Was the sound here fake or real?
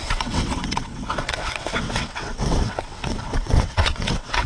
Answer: fake